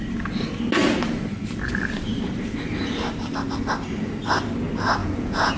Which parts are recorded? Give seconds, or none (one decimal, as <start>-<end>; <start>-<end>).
0.0-5.0